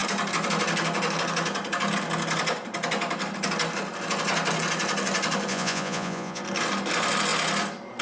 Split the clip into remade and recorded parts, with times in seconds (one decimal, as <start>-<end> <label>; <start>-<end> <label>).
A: 0.0-5.5 recorded; 5.5-6.4 remade; 6.4-8.0 recorded

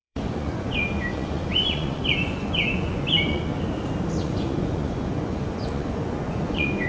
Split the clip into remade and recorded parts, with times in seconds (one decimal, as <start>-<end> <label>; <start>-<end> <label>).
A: 0.0-3.5 remade; 3.5-4.2 recorded; 4.2-6.9 remade